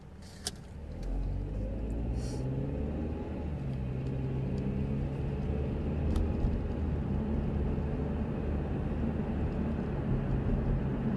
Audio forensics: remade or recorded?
recorded